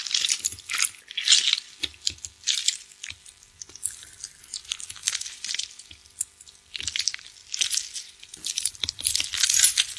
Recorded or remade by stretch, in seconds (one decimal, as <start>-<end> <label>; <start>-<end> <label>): 0.0-10.0 recorded